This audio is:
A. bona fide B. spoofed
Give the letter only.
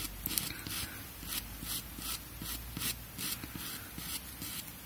A